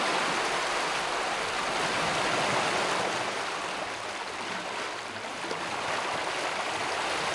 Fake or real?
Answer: real